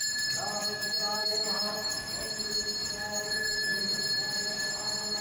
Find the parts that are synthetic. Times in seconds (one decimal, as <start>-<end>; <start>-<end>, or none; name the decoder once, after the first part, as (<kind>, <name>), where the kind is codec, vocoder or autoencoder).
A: 0.6-2.3 (autoencoder, DAC-VAE); 2.8-3.8